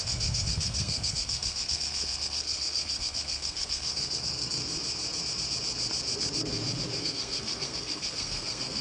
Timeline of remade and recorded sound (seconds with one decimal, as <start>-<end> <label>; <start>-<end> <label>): 0.0-4.6 remade; 4.6-7.0 recorded; 7.0-8.8 remade